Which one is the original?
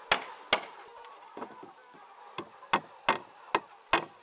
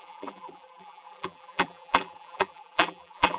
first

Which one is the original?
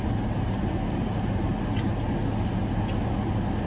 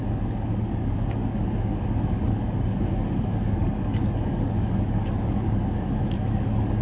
first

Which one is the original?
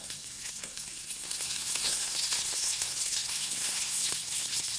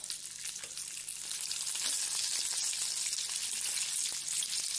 second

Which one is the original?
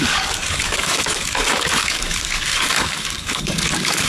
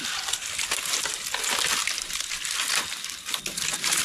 second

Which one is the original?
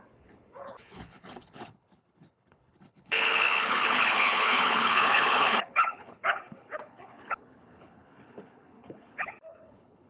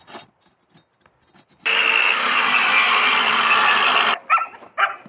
second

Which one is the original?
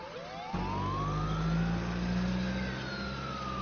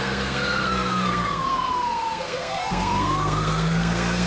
first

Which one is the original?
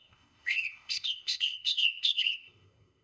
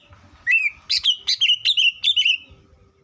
second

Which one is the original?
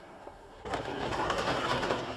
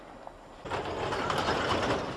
second